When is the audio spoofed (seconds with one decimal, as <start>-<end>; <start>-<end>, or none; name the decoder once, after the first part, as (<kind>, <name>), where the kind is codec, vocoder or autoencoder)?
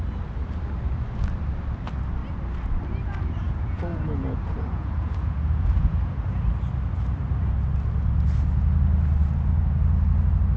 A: 3.4-6.4 (vocoder, Vocos)